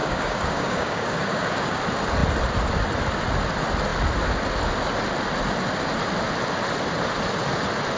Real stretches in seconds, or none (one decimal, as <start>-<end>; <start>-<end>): 1.8-8.0